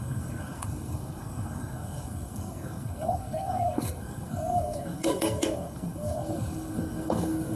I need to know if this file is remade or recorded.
remade